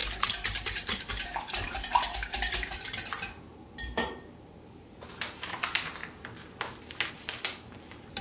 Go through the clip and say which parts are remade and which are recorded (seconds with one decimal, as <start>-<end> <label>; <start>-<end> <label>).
0.0-2.7 remade; 2.7-3.5 recorded; 3.5-6.0 remade; 6.0-7.1 recorded; 7.1-8.2 remade